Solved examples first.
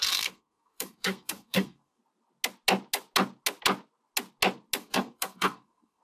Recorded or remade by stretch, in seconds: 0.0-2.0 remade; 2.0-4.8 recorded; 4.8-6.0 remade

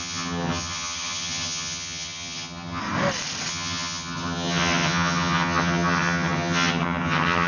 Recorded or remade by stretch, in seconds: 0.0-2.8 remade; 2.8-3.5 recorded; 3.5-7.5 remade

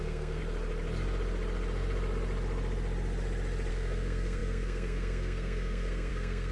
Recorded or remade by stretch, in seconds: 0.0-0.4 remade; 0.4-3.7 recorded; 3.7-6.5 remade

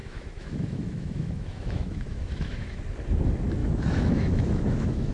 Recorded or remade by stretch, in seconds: 0.0-2.8 remade; 2.8-3.6 recorded; 3.6-5.1 remade